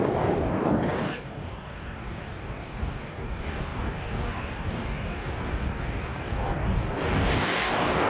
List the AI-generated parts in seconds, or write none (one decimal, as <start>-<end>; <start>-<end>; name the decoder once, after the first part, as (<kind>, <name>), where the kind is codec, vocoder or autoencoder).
0.0-8.1 (codec, DAC)